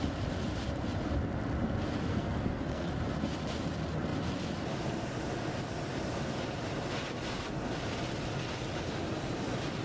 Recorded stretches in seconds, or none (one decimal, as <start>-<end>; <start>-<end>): 0.0-2.1; 2.9-9.8